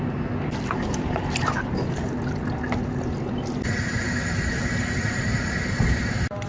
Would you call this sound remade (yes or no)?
no